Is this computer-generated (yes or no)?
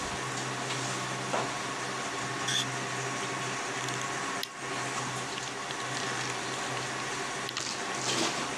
no